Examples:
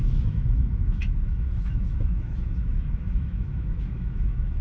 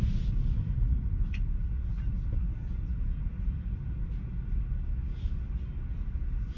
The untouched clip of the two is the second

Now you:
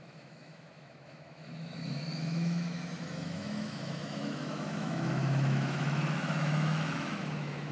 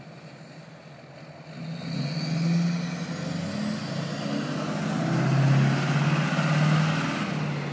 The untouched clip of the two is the second